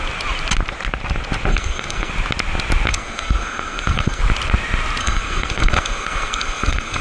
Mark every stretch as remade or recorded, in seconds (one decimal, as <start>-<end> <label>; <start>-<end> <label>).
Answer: 0.0-1.5 recorded; 1.5-2.1 remade; 2.1-2.9 recorded; 2.9-4.2 remade; 4.2-5.0 recorded; 5.0-7.0 remade